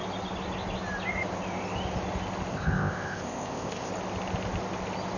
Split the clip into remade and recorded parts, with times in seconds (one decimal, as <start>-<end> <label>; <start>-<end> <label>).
0.0-2.5 recorded; 2.5-3.9 remade; 3.9-5.2 recorded